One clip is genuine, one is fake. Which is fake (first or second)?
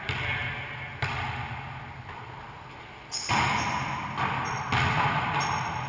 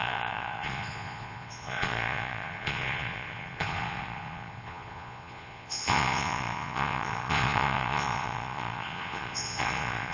second